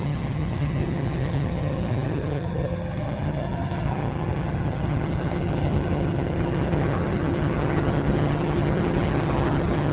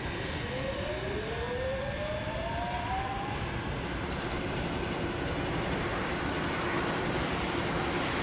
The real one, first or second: second